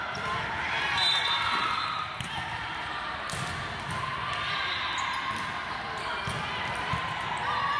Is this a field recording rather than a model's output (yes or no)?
yes